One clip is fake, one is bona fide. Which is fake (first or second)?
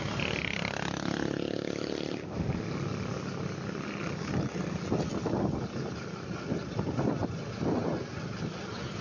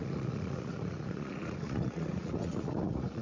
second